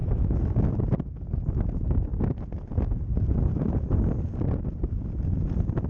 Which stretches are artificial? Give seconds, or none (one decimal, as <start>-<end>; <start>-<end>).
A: 0.0-0.7